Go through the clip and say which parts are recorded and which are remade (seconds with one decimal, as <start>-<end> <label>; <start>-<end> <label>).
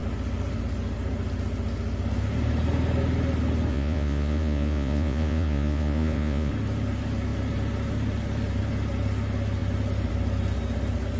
0.0-3.7 recorded; 3.7-6.5 remade; 6.5-11.2 recorded